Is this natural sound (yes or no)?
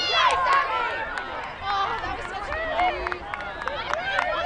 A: yes